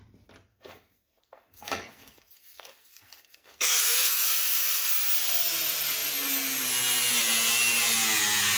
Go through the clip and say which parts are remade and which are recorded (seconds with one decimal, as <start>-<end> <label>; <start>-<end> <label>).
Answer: 0.0-0.5 recorded; 0.5-4.9 remade; 4.9-8.6 recorded